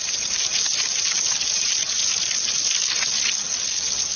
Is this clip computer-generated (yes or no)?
no